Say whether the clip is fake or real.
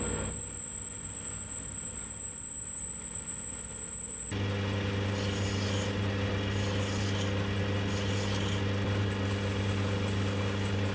real